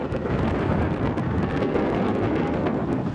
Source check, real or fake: fake